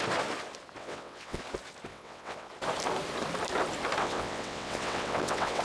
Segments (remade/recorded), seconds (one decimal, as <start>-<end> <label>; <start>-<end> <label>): 0.0-0.8 recorded; 0.8-1.4 remade; 1.4-1.9 recorded; 1.9-2.5 remade; 2.5-4.0 recorded; 4.0-5.6 remade